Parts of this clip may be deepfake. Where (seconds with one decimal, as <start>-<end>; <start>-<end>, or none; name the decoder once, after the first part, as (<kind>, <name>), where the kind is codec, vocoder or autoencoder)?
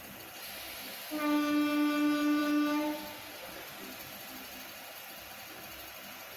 none